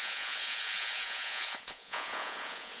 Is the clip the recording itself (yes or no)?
no